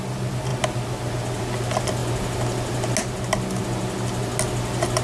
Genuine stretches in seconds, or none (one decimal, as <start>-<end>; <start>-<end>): 0.0-5.0